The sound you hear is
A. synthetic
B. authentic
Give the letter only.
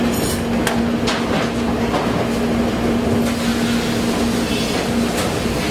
B